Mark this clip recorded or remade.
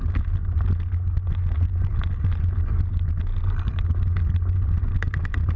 recorded